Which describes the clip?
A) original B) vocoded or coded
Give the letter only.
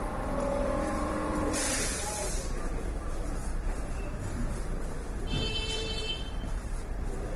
B